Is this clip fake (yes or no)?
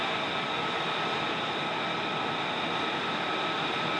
no